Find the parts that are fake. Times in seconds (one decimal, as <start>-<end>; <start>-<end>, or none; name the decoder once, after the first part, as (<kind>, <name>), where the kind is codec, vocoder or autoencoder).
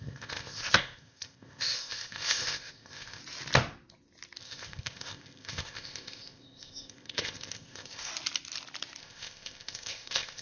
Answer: 0.0-3.2 (codec, ZipCodec); 4.4-8.1; 9.0-10.4